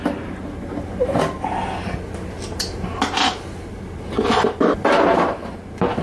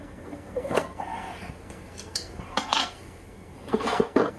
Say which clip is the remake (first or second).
second